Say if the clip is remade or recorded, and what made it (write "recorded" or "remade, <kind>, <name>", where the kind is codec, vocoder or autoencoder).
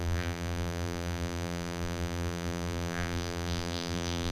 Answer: remade, vocoder, BigVGAN v2